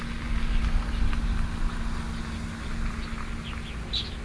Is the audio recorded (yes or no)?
yes